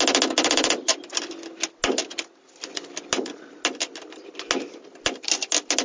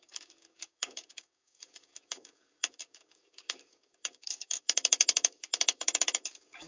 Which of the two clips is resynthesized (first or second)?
second